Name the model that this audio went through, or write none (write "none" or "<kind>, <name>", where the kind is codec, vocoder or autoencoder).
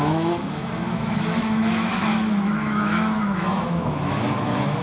autoencoder, DAC-VAE